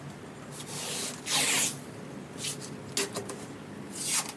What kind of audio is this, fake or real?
real